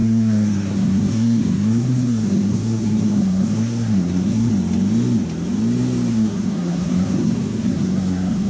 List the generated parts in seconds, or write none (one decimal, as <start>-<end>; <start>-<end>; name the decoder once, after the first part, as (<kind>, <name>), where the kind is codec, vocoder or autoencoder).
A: 0.0-4.5 (codec, SNAC); 6.1-8.5